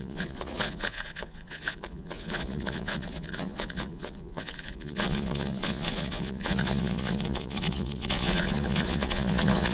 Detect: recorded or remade remade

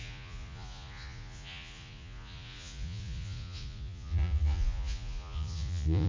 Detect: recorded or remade remade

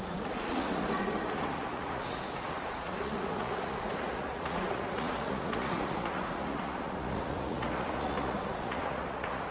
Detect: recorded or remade remade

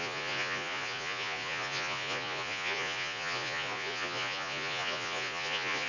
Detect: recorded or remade remade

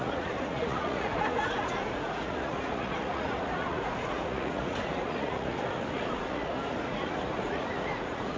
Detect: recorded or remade remade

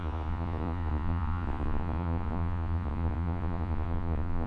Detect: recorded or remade remade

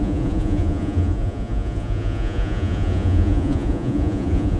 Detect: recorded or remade remade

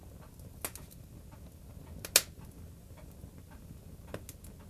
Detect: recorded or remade recorded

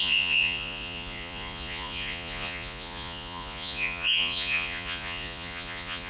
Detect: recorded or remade remade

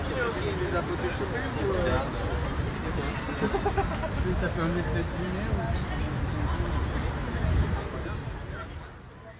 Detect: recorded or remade recorded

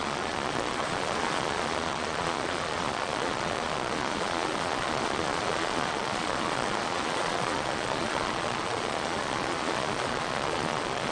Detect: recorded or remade remade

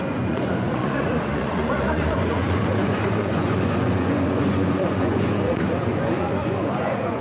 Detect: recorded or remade remade